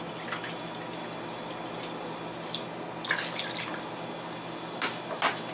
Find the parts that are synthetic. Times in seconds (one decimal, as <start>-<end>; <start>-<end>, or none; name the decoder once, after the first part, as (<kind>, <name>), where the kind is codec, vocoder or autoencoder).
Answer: none